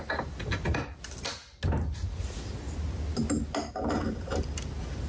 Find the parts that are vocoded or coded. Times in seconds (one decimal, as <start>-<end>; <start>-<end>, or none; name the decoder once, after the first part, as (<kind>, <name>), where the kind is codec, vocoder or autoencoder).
none